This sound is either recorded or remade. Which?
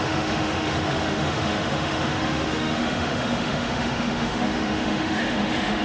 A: remade